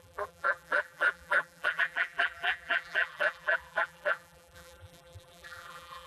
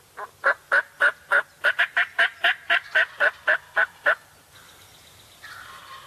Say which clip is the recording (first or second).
second